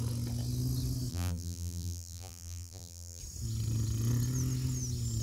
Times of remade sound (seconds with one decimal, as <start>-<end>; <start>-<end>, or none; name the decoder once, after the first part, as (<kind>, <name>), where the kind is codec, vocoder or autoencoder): 1.1-3.2 (vocoder, BigVGAN v2)